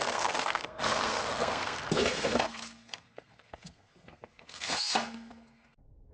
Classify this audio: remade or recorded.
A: remade